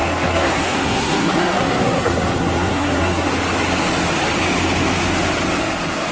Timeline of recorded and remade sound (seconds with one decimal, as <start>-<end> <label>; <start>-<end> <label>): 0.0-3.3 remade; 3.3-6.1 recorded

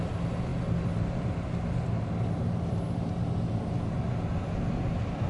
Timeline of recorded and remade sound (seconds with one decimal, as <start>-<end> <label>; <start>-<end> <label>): 0.0-5.3 recorded

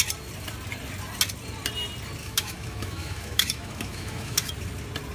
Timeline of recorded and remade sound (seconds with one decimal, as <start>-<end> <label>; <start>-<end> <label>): 0.0-2.2 recorded; 2.2-4.5 remade; 4.5-5.1 recorded

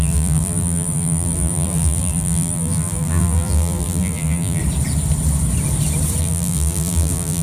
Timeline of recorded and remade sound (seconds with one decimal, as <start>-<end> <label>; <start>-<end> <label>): 0.0-4.6 remade; 4.6-6.2 recorded; 6.2-7.4 remade

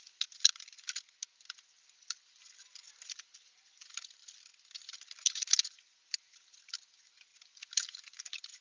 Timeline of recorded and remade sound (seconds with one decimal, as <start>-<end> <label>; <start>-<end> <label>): 0.0-8.6 recorded

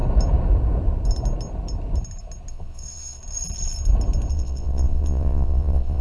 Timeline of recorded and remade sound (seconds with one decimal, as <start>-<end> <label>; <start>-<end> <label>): 0.0-2.5 recorded; 2.5-3.2 remade; 3.2-4.3 recorded; 4.3-6.0 remade